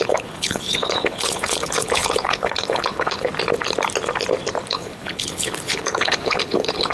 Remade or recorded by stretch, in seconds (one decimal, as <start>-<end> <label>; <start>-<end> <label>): 0.0-3.3 remade; 3.3-4.7 recorded; 4.7-6.9 remade